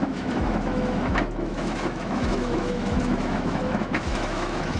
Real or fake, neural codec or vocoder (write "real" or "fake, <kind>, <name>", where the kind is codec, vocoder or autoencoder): fake, autoencoder, DAC-VAE